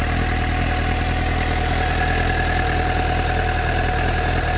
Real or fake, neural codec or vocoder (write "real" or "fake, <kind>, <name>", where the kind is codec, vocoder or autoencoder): real